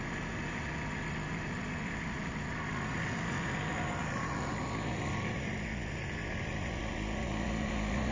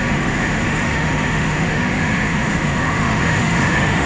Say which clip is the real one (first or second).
first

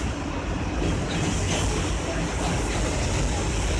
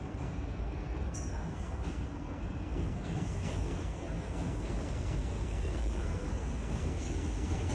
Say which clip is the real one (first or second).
first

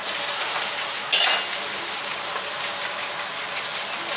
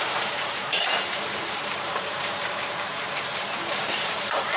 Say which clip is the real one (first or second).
first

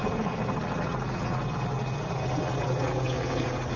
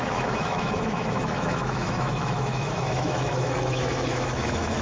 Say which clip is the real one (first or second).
first